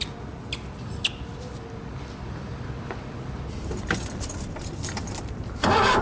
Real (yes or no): yes